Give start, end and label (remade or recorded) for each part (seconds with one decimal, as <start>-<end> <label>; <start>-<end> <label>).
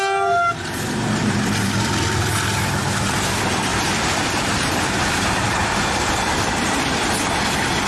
0.0-1.2 recorded; 1.2-1.9 remade; 1.9-3.7 recorded; 3.7-6.7 remade; 6.7-7.9 recorded